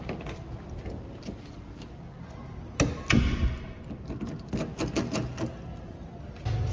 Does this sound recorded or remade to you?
recorded